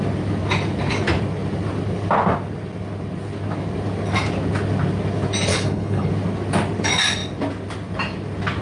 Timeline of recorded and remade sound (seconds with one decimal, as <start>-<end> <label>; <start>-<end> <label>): 0.0-5.5 recorded; 5.5-6.1 remade; 6.1-8.6 recorded